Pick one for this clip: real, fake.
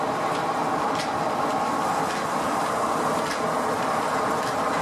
real